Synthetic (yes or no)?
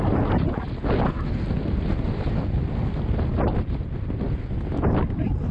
no